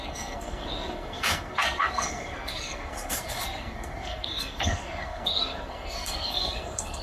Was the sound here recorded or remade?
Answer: remade